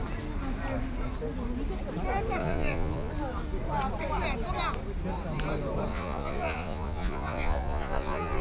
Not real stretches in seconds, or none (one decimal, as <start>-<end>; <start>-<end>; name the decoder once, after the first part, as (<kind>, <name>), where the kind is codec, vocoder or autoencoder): 2.4-3.1 (vocoder, Vocos); 5.9-8.4